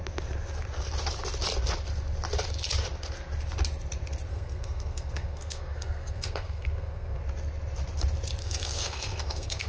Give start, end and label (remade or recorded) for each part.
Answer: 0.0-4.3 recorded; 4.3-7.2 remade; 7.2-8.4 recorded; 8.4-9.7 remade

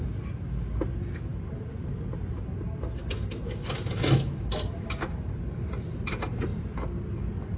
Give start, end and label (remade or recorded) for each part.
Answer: 0.0-6.5 recorded; 6.5-7.6 remade

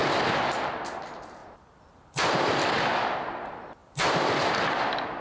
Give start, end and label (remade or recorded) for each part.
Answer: 0.0-1.4 recorded; 1.4-2.8 remade; 2.8-3.8 recorded; 3.8-4.4 remade; 4.4-5.2 recorded

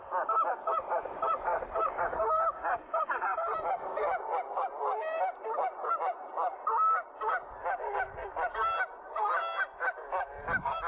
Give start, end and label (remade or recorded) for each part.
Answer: 0.0-10.9 recorded

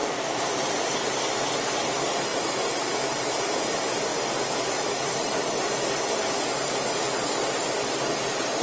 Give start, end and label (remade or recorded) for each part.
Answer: 0.0-1.5 remade; 1.5-2.3 recorded; 2.3-3.1 remade; 3.1-8.6 recorded

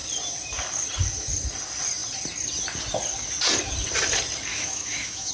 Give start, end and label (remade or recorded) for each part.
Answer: 0.0-4.5 recorded; 4.5-5.3 remade

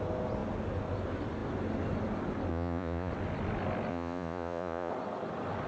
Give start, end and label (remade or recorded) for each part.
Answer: 0.0-2.5 recorded; 2.5-3.1 remade; 3.1-3.9 recorded; 3.9-4.9 remade; 4.9-5.7 recorded